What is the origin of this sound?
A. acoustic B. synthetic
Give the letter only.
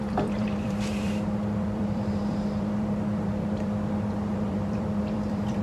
B